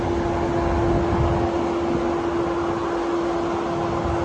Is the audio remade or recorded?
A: recorded